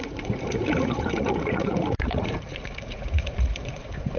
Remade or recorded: remade